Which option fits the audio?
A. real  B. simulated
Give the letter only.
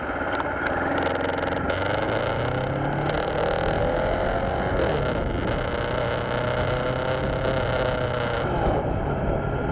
A